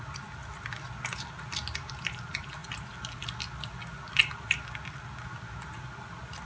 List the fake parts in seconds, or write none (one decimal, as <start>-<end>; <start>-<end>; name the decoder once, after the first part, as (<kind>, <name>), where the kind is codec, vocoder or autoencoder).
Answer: none